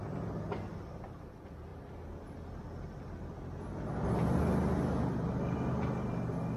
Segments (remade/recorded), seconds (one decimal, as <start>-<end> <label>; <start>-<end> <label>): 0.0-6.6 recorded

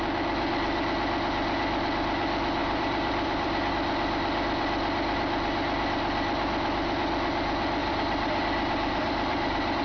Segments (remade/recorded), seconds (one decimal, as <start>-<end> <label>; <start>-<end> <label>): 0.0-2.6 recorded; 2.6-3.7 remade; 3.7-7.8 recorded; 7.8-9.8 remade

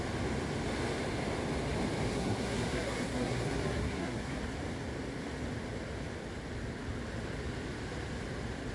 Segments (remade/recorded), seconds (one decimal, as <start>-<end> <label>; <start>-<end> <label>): 0.0-2.1 recorded; 2.1-4.4 remade; 4.4-8.7 recorded